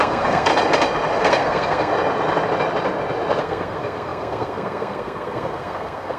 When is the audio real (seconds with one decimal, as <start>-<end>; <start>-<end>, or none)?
0.5-1.2; 1.9-3.4